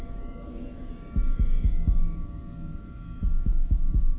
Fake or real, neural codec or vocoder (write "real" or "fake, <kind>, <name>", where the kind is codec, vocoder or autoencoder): fake, codec, DAC